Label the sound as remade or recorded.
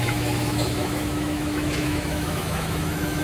remade